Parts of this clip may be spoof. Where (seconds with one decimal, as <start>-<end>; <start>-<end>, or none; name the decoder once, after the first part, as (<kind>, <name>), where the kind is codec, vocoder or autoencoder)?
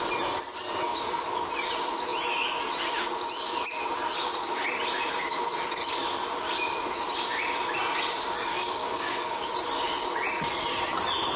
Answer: 0.9-1.5 (codec, DAC); 8.5-9.5